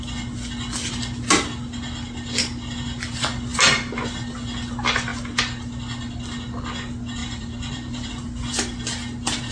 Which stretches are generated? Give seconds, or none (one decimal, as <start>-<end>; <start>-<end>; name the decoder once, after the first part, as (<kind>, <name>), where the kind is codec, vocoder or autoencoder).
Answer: 7.2-8.1 (vocoder, BigVGAN v2)